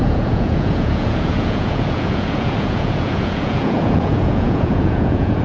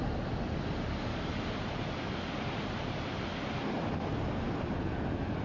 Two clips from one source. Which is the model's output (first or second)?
first